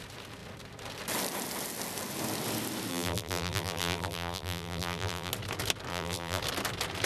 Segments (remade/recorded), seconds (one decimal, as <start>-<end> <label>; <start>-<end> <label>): 0.0-2.9 recorded; 2.9-5.3 remade; 5.3-5.9 recorded; 5.9-6.4 remade; 6.4-7.1 recorded